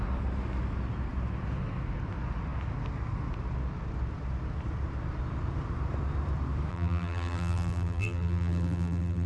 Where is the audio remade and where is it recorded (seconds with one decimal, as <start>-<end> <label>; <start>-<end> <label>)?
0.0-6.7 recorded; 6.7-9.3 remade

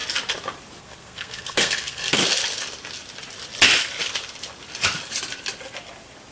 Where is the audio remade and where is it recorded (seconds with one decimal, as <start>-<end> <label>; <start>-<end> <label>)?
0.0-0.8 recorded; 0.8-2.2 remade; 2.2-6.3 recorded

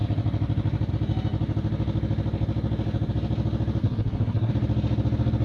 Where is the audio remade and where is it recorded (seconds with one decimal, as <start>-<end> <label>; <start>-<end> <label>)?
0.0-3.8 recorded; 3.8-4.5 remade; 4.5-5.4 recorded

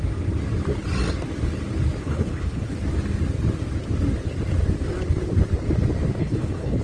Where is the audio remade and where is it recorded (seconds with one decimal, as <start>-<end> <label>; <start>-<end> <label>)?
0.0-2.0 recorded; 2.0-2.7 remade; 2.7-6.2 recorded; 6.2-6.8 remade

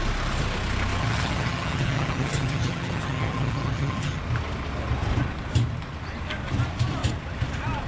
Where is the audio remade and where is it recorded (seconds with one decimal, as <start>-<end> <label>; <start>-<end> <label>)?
0.0-1.0 recorded; 1.0-4.2 remade; 4.2-7.9 recorded

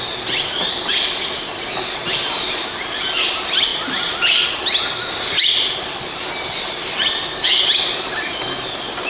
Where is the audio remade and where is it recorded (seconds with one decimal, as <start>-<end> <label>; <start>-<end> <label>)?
0.0-9.1 recorded

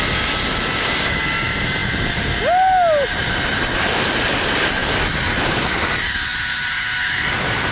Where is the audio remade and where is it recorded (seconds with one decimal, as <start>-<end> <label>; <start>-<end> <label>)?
0.0-7.7 recorded